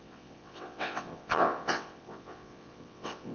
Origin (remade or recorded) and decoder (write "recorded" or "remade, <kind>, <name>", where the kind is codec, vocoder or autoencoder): remade, vocoder, WaveNeXt